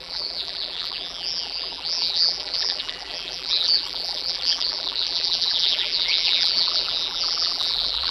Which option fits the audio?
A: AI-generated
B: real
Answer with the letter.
A